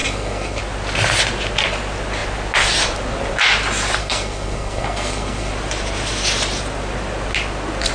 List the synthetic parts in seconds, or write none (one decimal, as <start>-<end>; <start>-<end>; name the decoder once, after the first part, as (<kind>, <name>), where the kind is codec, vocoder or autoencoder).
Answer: 0.0-0.6 (codec, SNAC); 4.0-5.5